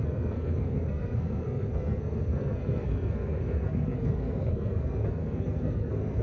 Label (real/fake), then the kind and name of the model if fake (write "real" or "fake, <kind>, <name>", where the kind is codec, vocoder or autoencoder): fake, codec, SNAC